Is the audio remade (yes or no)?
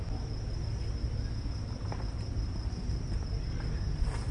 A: no